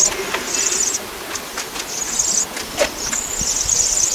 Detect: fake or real real